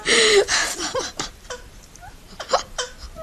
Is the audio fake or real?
fake